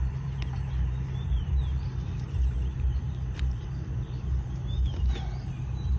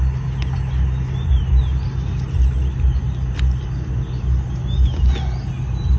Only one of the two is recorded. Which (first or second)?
second